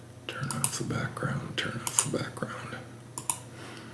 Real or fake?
real